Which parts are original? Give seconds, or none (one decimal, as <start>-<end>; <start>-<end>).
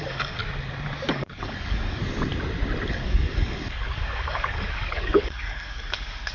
0.4-1.1; 2.0-2.9